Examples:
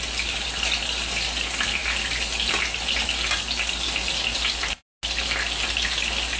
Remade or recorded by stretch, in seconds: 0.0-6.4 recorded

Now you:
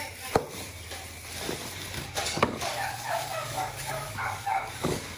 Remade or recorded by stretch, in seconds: 0.0-2.0 recorded; 2.0-5.2 remade

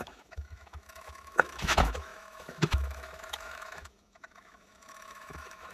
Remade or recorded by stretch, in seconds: 0.0-5.7 remade

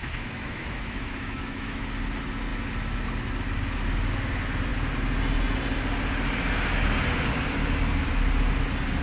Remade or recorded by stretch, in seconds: 0.0-1.8 remade; 1.8-9.0 recorded

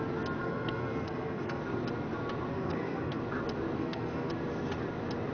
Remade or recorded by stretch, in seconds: 0.0-0.4 recorded; 0.4-1.6 remade; 1.6-2.5 recorded; 2.5-3.2 remade; 3.2-3.8 recorded; 3.8-4.3 remade; 4.3-5.3 recorded